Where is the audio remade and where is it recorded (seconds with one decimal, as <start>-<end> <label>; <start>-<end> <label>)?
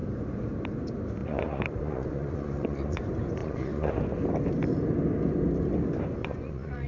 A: 0.0-1.2 recorded; 1.2-3.0 remade; 3.0-3.4 recorded; 3.4-3.9 remade; 3.9-6.2 recorded; 6.2-6.9 remade